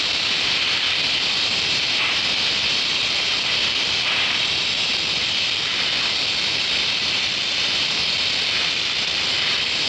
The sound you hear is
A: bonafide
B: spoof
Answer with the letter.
B